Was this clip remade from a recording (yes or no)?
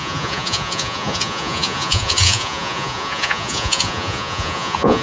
yes